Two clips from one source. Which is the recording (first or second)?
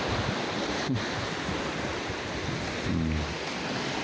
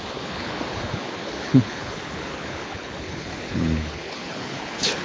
first